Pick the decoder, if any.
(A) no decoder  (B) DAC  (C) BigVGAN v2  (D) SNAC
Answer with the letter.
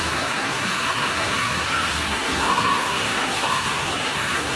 D